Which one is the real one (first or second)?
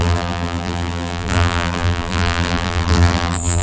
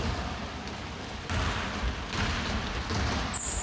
second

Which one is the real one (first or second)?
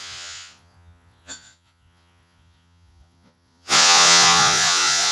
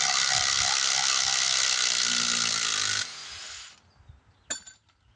second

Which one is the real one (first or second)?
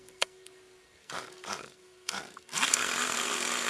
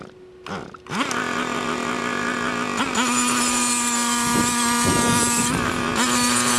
second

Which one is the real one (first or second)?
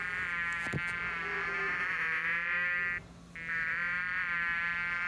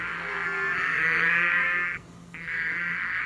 first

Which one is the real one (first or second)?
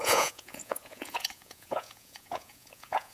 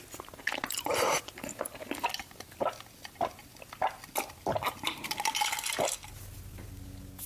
second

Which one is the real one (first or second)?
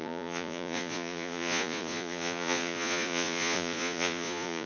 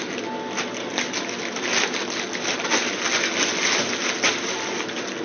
second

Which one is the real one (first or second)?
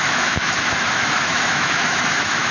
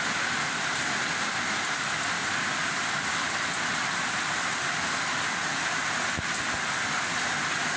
second